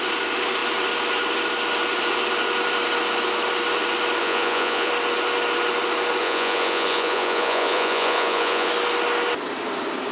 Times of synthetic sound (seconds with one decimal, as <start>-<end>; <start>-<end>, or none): 4.2-4.9; 6.2-8.7